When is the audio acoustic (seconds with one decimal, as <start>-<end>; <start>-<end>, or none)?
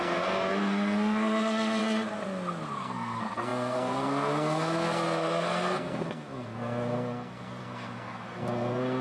1.8-2.8